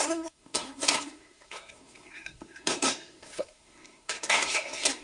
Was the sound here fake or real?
fake